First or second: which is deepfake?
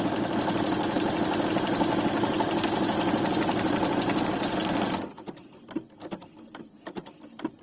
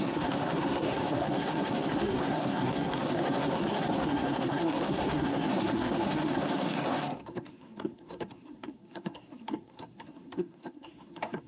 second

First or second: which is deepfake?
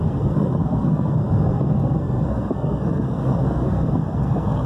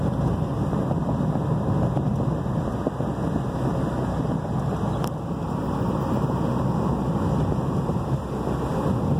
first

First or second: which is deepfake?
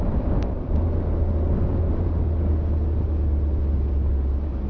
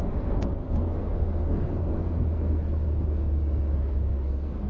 second